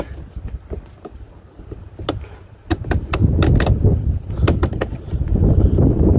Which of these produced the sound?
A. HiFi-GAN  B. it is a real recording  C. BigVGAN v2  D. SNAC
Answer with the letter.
B